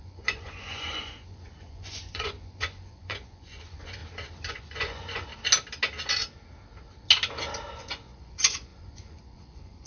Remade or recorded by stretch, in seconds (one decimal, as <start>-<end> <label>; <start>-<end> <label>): 0.0-4.0 remade; 4.0-4.5 recorded; 4.5-5.3 remade; 5.3-7.7 recorded; 7.7-9.9 remade